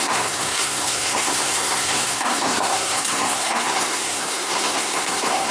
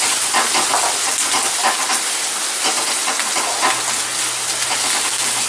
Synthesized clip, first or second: first